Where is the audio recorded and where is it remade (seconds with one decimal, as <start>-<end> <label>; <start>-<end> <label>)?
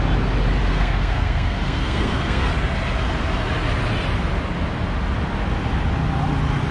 0.0-0.6 recorded; 0.6-2.5 remade; 2.5-6.7 recorded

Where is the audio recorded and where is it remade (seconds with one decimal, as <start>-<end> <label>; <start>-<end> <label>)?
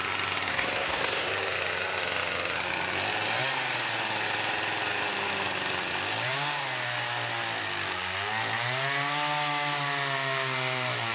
0.0-0.5 recorded; 0.5-1.3 remade; 1.3-11.1 recorded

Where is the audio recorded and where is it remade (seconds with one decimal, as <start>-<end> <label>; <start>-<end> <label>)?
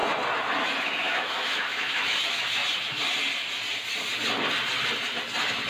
0.0-0.8 recorded; 0.8-2.6 remade; 2.6-5.7 recorded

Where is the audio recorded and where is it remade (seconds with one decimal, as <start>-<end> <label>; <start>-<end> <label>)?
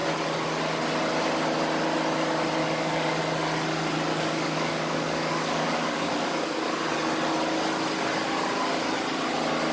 0.0-2.6 recorded; 2.6-3.2 remade; 3.2-4.1 recorded; 4.1-6.8 remade; 6.8-9.7 recorded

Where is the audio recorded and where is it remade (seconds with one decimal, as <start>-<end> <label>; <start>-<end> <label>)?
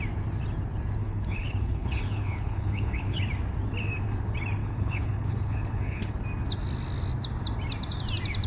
0.0-1.0 recorded; 1.0-3.2 remade; 3.2-4.6 recorded; 4.6-6.1 remade; 6.1-8.5 recorded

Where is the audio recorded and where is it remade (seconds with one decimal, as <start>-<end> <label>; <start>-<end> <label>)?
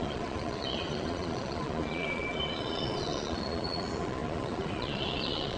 0.0-5.6 remade